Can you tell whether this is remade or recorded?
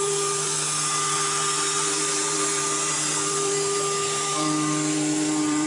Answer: remade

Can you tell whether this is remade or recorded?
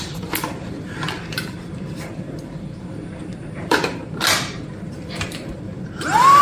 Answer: remade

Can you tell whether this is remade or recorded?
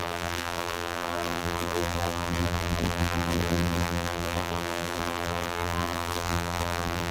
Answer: remade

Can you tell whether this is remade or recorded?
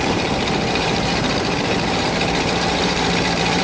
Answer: remade